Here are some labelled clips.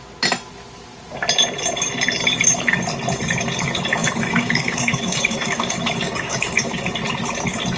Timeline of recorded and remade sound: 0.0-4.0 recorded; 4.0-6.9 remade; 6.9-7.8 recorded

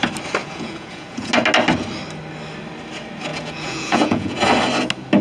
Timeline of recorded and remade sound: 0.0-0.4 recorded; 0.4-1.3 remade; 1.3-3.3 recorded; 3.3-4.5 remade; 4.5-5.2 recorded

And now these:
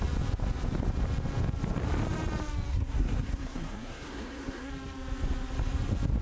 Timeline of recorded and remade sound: 0.0-2.7 recorded; 2.7-4.7 remade; 4.7-6.2 recorded

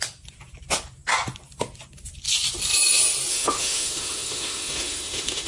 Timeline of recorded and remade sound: 0.0-3.3 recorded; 3.3-5.5 remade

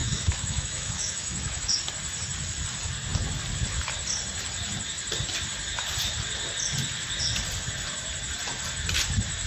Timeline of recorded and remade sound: 0.0-1.7 remade; 1.7-9.5 recorded